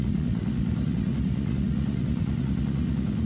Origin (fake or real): fake